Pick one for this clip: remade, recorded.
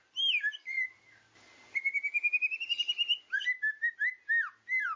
recorded